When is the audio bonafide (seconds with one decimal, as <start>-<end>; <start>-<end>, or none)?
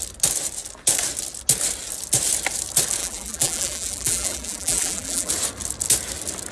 0.0-3.0; 5.3-6.5